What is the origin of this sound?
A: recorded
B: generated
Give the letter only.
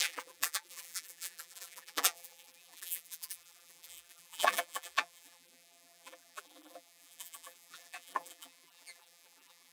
B